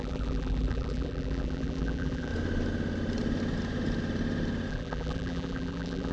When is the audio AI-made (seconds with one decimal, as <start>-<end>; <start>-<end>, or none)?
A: 0.0-2.3; 4.7-6.1